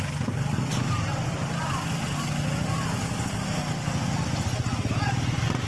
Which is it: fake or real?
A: real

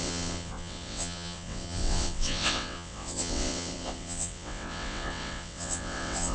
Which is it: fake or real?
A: fake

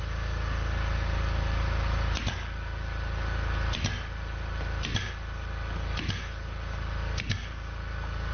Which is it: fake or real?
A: real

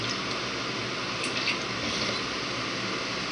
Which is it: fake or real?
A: real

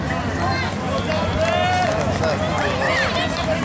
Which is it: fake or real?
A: real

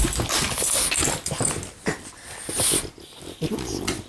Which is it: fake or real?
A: real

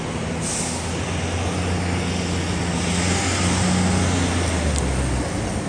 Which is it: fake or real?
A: real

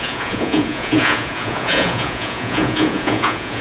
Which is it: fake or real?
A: fake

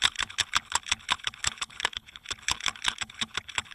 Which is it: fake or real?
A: fake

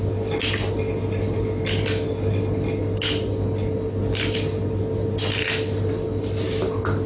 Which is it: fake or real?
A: real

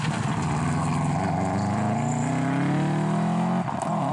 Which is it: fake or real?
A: real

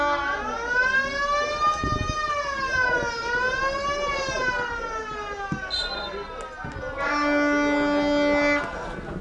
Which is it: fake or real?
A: real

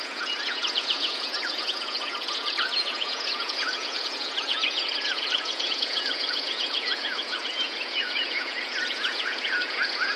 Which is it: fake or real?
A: fake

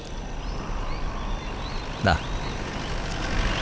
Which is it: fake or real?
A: real